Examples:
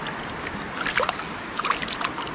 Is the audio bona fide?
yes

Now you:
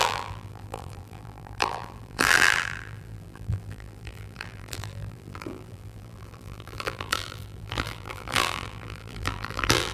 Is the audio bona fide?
no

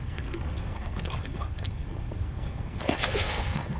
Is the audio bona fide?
no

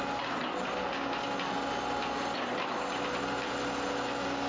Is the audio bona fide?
yes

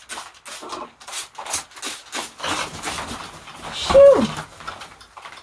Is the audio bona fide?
yes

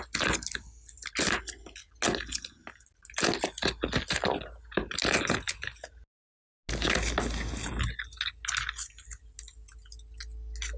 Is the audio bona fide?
yes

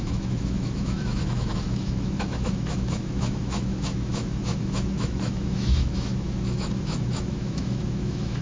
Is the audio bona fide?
no